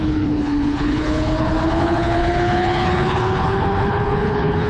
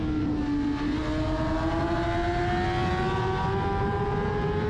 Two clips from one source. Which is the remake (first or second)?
first